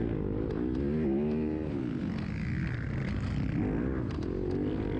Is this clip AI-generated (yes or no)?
no